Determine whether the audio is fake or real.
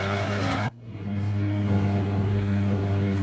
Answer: fake